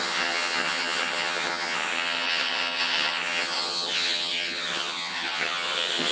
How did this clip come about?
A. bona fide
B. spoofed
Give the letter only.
B